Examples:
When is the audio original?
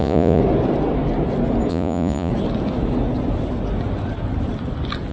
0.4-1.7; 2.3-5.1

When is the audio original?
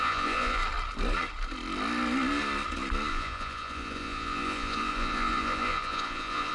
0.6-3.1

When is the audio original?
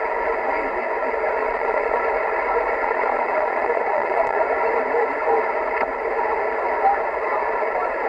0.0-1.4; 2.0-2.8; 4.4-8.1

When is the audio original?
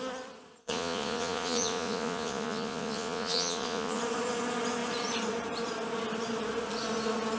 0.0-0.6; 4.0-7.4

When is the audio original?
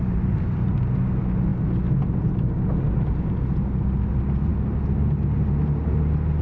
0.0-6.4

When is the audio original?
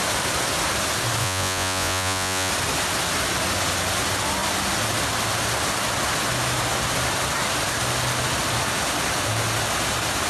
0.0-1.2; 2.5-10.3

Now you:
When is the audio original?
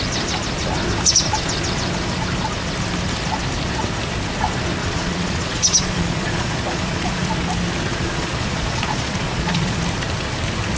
0.0-4.8; 7.3-7.9; 9.8-10.8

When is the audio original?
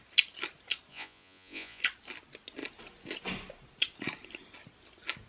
0.0-0.9; 1.8-5.3